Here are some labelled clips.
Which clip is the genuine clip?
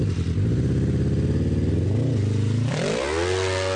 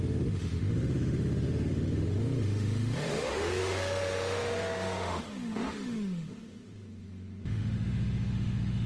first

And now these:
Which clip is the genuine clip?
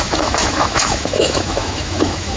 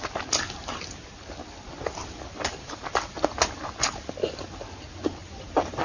second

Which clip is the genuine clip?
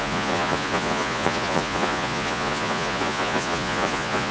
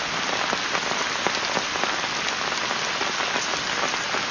second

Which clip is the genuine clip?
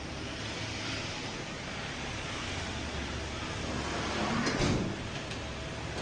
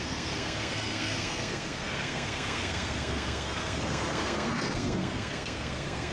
first